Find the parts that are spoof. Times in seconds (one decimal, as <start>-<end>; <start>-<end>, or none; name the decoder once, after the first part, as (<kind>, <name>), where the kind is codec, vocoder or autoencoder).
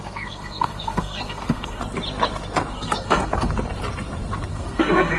0.0-1.8 (codec, SNAC); 2.7-3.5; 4.5-5.2